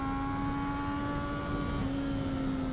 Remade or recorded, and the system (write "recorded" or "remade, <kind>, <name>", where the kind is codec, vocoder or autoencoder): recorded